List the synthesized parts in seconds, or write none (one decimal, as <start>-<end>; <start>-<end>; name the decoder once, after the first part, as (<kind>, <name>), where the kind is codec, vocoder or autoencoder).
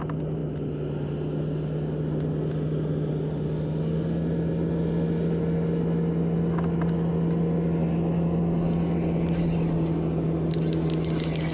none